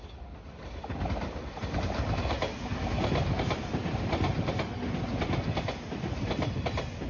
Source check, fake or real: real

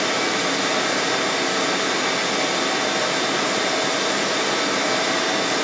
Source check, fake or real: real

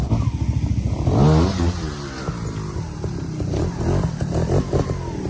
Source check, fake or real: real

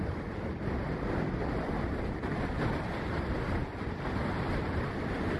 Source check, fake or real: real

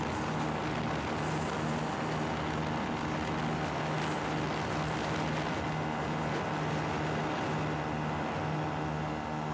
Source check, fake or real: real